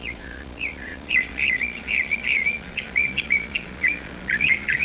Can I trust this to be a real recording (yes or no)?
no